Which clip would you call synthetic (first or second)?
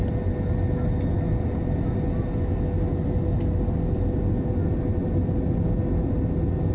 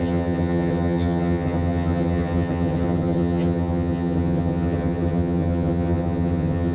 second